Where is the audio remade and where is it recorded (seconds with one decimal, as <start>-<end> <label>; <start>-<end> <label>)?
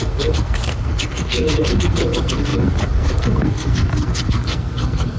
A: 0.0-5.2 remade